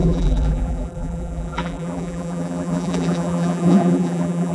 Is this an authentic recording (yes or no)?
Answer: no